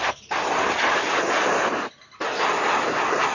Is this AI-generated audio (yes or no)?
no